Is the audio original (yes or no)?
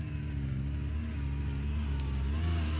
yes